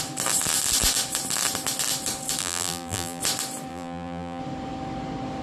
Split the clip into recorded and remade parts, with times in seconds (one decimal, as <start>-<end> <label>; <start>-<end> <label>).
0.0-2.4 recorded; 2.4-3.2 remade; 3.2-3.7 recorded; 3.7-4.4 remade; 4.4-5.4 recorded